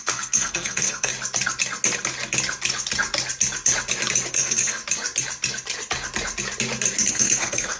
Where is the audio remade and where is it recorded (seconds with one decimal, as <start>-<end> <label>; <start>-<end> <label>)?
0.0-1.1 remade; 1.1-4.3 recorded; 4.3-4.8 remade; 4.8-7.1 recorded; 7.1-7.8 remade

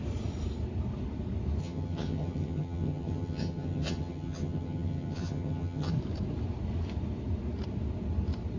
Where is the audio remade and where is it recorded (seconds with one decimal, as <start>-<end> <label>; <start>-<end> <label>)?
0.0-1.6 recorded; 1.6-5.9 remade; 5.9-8.6 recorded